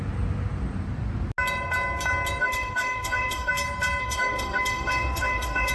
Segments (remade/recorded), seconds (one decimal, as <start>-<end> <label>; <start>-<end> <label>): 0.0-2.4 recorded; 2.4-3.5 remade; 3.5-4.0 recorded; 4.0-5.7 remade